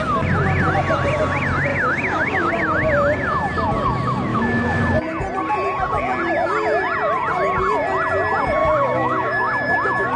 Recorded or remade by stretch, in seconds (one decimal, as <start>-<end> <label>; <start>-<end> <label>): 0.0-1.7 recorded; 1.7-2.5 remade; 2.5-4.3 recorded; 4.3-4.8 remade; 4.8-8.6 recorded; 8.6-10.2 remade